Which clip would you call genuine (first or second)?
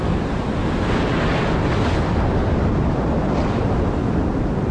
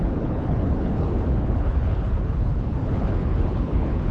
first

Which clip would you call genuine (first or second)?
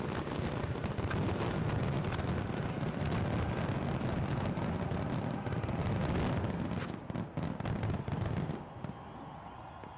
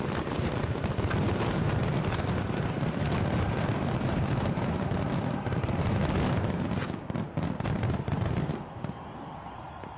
first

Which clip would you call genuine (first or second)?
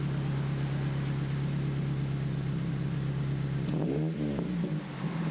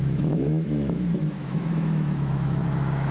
first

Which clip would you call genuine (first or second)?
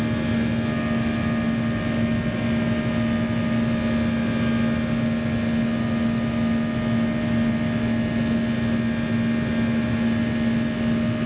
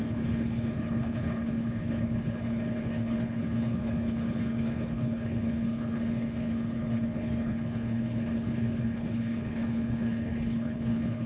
first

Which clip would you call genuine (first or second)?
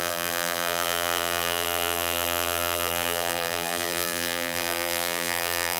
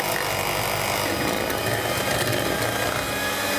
second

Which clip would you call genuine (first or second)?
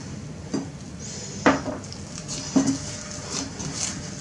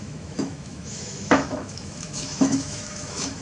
first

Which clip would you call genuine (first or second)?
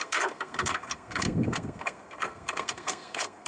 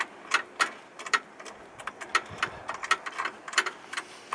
second